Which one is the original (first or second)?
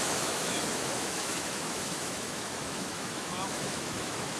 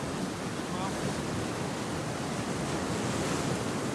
second